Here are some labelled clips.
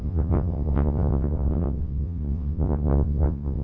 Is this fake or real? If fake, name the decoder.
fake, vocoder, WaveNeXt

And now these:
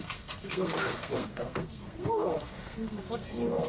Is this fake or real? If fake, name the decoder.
fake, codec, SNAC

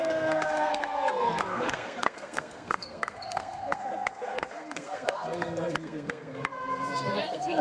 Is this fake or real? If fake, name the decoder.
fake, codec, SNAC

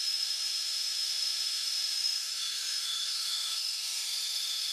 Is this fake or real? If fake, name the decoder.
fake, autoencoder, DAC-VAE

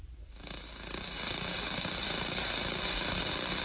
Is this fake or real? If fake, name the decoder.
fake, vocoder, BigVGAN v2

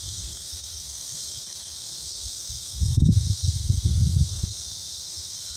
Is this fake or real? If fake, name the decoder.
fake, codec, SNAC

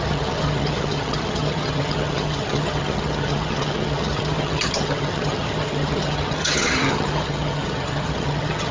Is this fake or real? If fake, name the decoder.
fake, vocoder, HiFi-GAN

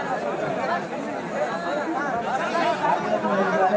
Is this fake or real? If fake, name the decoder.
real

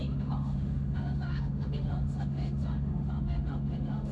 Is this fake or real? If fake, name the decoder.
fake, autoencoder, DAC-VAE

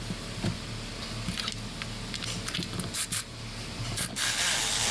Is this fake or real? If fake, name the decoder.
real